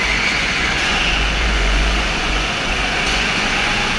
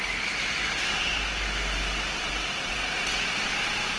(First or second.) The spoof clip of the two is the first